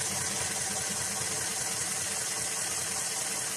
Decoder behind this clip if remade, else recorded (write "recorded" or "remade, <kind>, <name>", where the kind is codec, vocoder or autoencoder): recorded